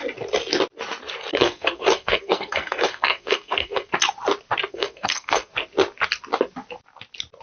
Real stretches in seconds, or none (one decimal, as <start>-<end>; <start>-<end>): 0.0-1.3; 3.9-4.7; 5.5-7.4